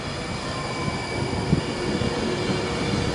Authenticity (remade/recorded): recorded